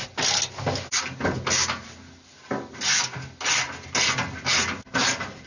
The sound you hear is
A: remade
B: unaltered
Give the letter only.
B